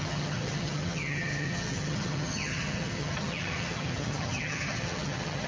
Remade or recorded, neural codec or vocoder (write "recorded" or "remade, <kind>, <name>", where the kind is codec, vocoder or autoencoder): remade, vocoder, HiFi-GAN